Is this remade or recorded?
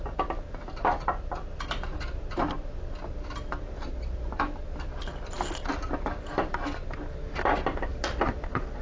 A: recorded